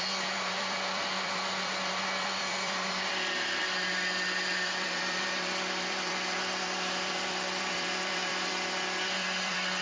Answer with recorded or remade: remade